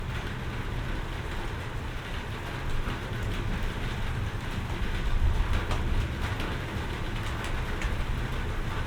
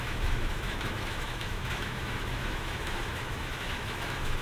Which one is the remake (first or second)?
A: second